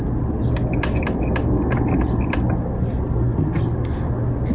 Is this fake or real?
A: real